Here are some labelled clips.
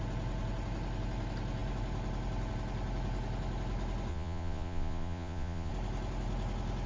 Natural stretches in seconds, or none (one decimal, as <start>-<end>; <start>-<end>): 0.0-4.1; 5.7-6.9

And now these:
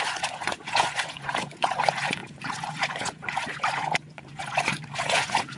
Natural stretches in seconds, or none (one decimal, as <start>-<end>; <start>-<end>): none

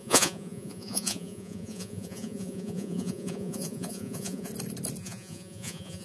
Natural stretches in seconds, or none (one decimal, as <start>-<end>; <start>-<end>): 4.5-5.0

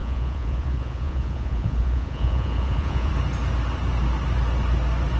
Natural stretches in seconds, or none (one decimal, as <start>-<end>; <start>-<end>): 3.1-5.2

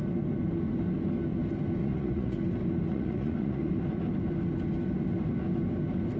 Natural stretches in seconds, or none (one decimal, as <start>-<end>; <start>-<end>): 0.0-1.8; 2.4-2.9; 3.7-6.2

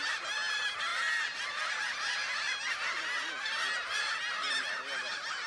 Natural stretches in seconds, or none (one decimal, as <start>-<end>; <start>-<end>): 0.0-5.5

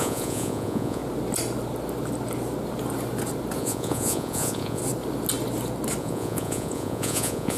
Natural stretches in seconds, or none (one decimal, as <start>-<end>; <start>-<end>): 1.0-3.6; 4.8-6.0

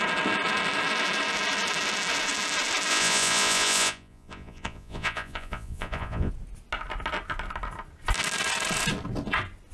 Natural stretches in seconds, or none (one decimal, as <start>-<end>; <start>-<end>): 0.0-2.9; 6.3-9.7